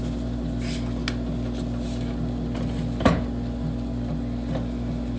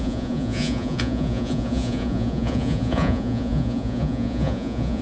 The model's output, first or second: second